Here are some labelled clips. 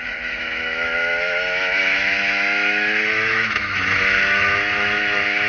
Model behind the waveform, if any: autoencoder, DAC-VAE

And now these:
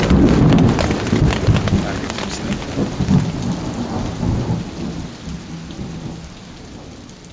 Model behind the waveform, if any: none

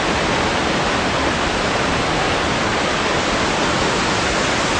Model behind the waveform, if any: none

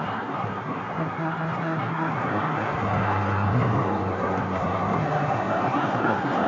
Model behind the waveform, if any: codec, SNAC